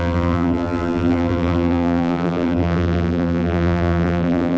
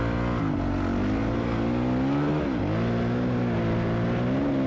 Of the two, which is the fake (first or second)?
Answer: first